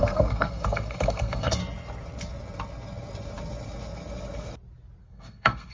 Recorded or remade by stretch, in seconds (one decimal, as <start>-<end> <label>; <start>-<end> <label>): 0.0-1.6 remade; 1.6-5.0 recorded; 5.0-5.7 remade